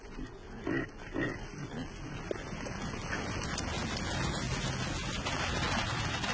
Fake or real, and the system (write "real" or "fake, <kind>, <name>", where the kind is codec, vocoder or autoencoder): real